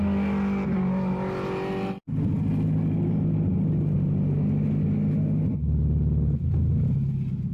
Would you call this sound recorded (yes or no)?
yes